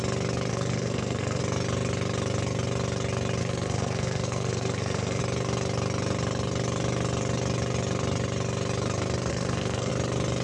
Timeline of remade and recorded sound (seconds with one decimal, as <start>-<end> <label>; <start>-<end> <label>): 0.0-0.5 recorded; 0.5-1.4 remade; 1.4-3.4 recorded; 3.4-5.2 remade; 5.2-9.3 recorded; 9.3-9.9 remade; 9.9-10.4 recorded